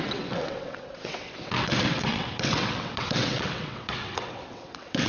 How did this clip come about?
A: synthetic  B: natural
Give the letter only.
A